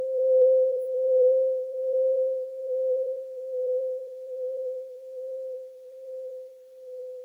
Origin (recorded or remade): remade